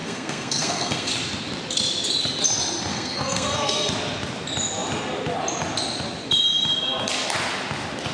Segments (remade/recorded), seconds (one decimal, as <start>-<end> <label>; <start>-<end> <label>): 0.0-1.1 remade; 1.1-2.9 recorded; 2.9-3.9 remade; 3.9-8.1 recorded